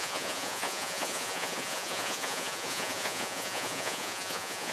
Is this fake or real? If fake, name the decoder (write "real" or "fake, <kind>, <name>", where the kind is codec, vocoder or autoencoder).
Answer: fake, vocoder, Vocos